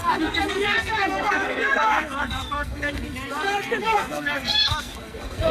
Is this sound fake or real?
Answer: fake